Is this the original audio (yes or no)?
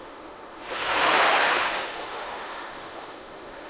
no